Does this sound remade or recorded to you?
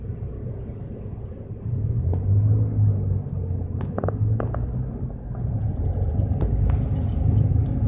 recorded